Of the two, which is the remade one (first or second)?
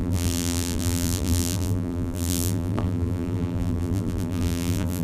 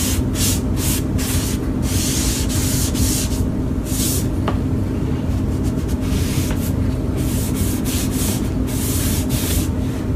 first